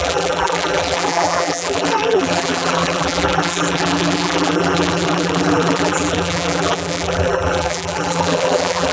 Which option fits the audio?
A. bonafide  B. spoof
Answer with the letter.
B